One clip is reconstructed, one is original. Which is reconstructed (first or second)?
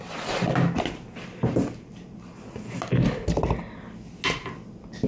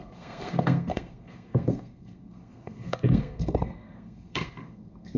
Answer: second